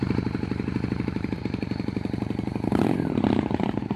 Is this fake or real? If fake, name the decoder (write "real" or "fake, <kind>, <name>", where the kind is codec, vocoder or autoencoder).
fake, vocoder, BigVGAN v2